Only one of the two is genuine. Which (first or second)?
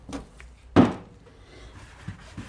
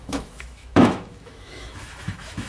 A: first